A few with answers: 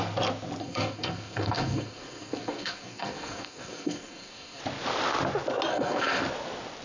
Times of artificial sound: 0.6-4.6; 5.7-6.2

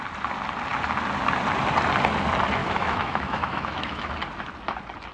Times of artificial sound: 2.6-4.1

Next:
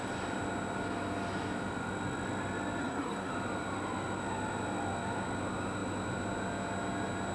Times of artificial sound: 2.8-3.3

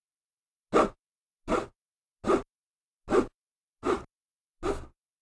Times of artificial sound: none

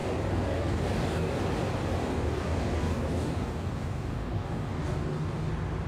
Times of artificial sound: 0.0-1.4; 2.0-5.5